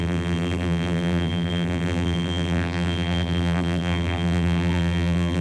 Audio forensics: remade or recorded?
remade